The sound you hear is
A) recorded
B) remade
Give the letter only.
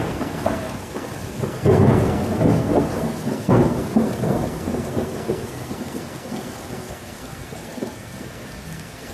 B